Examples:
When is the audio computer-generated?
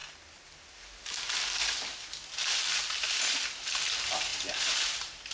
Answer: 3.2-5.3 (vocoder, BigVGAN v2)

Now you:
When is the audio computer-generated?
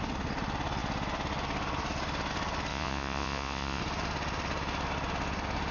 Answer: 2.7-3.8 (vocoder, Vocos)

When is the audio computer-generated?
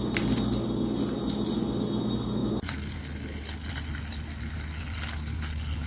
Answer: none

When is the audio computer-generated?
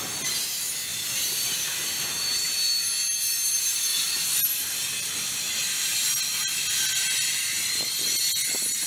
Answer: 0.9-2.5 (vocoder, BigVGAN v2); 3.9-4.4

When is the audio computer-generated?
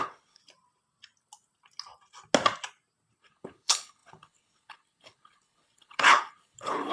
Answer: 0.0-0.4 (codec, HILCodec); 3.2-6.9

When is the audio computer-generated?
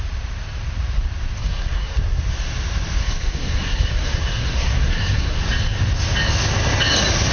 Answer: 1.4-2.2 (codec, SNAC); 3.0-5.4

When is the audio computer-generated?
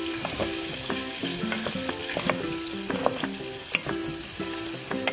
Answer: 0.4-1.4 (codec, DAC)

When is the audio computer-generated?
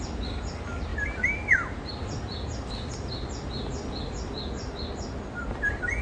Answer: none